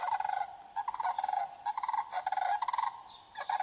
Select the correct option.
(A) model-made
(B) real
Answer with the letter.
B